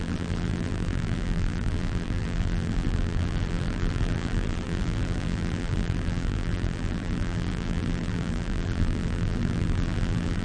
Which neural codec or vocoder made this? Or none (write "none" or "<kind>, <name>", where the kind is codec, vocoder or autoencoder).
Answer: vocoder, BigVGAN v2